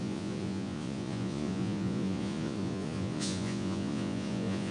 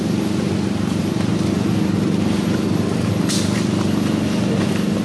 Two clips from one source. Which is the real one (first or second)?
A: second